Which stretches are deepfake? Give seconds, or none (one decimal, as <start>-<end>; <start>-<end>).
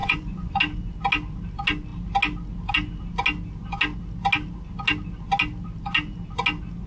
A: 0.0-0.6